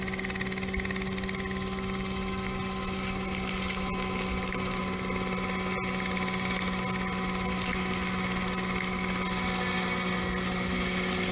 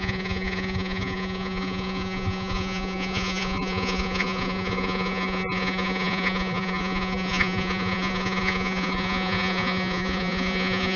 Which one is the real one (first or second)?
first